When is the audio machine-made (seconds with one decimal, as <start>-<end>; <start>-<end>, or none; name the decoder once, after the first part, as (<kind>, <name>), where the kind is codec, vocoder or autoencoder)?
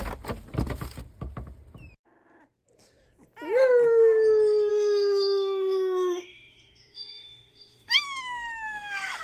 4.7-9.2 (autoencoder, DAC-VAE)